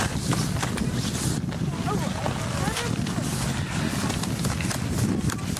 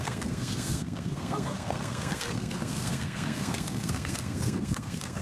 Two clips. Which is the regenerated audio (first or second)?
second